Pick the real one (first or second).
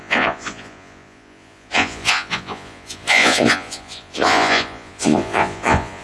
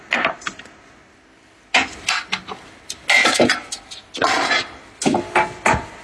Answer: second